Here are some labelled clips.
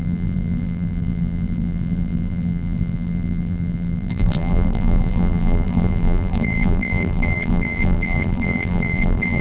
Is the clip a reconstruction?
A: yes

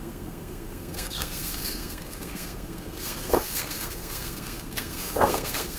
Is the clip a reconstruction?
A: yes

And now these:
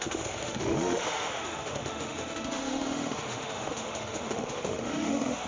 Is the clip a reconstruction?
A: yes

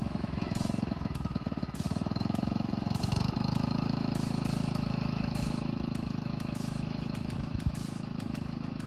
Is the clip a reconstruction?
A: yes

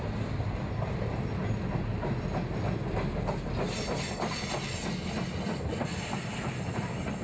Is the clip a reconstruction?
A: no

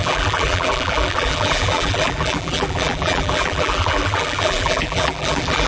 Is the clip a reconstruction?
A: yes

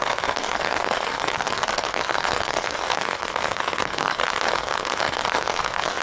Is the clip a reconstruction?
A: yes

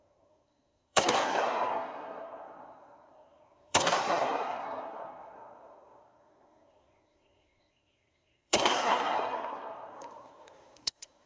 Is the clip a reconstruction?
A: yes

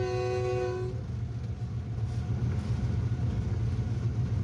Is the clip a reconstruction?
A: no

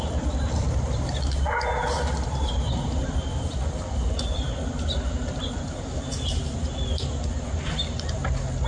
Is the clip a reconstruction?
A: no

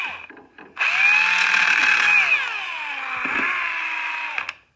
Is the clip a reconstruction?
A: no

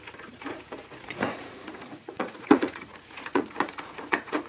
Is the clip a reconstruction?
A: yes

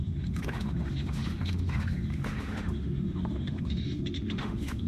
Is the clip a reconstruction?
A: yes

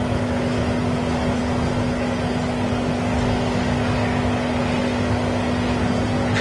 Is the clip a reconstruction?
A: no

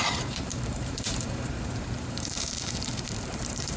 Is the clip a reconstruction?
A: yes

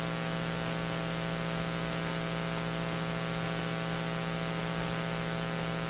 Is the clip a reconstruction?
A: no